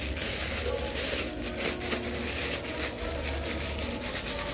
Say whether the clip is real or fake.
real